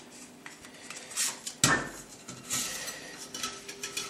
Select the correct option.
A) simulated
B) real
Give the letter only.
B